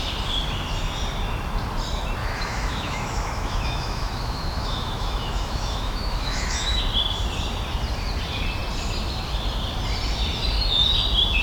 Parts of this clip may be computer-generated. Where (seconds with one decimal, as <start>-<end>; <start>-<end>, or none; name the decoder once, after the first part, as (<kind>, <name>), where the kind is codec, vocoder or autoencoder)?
2.2-6.8 (autoencoder, DAC-VAE)